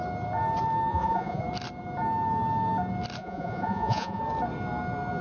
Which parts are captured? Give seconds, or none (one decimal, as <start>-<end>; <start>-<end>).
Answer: 0.0-0.9; 1.4-3.2; 4.2-5.2